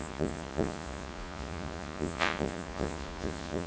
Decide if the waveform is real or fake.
fake